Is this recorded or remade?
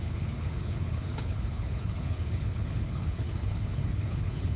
remade